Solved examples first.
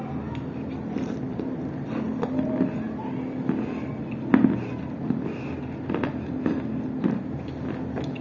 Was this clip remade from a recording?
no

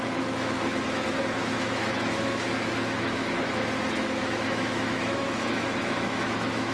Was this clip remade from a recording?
yes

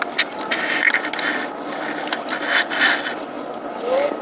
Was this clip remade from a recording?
no